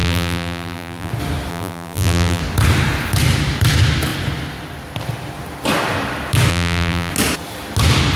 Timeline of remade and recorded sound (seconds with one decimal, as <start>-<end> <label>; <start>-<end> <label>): 0.0-1.1 remade; 1.1-1.5 recorded; 1.5-2.4 remade; 2.4-6.5 recorded; 6.5-7.1 remade; 7.1-8.2 recorded